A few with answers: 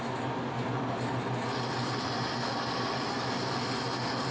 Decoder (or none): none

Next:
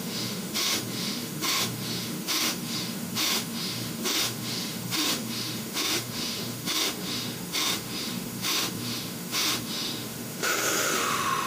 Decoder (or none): autoencoder, DAC-VAE